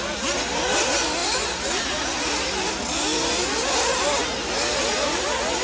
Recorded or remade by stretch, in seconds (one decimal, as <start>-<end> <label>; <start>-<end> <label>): 0.0-5.6 recorded

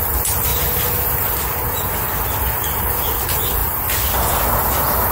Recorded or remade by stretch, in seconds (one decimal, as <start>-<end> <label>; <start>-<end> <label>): 0.0-5.1 recorded

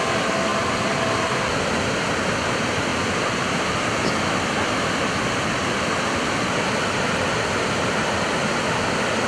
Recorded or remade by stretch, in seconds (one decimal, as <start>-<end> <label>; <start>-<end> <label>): 0.0-9.3 recorded

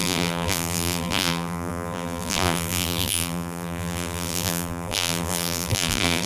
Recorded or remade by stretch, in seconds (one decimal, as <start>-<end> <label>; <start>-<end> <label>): 0.0-6.3 remade

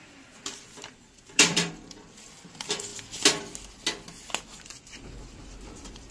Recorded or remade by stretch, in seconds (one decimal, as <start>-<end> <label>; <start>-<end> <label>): 0.0-2.9 remade; 2.9-4.8 recorded; 4.8-6.1 remade

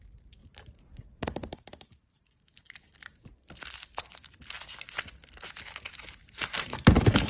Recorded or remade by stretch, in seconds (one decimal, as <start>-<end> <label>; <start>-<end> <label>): 0.0-0.4 recorded; 0.4-4.4 remade; 4.4-6.2 recorded; 6.2-7.3 remade

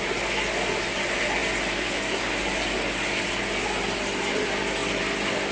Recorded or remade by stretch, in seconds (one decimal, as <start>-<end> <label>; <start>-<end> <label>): 0.0-5.5 recorded